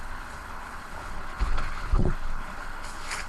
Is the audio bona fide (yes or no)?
no